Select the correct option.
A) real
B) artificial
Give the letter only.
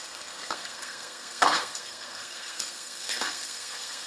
B